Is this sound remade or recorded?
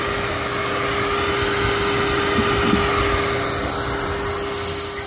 recorded